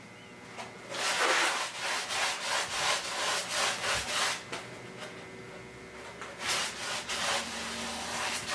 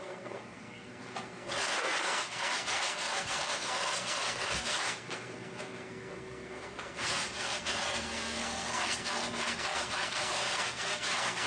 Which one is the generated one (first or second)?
second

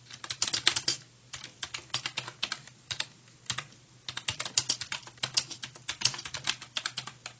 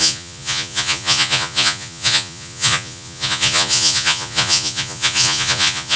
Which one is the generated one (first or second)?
second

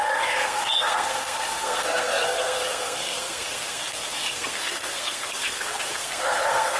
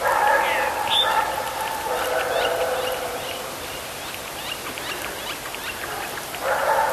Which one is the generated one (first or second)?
first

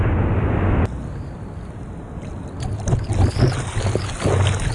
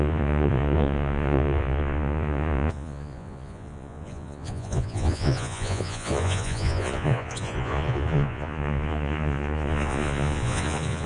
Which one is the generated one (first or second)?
second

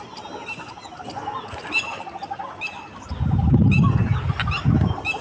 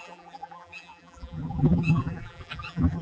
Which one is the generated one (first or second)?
second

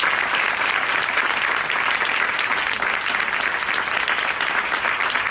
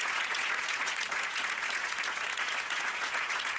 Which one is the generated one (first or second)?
second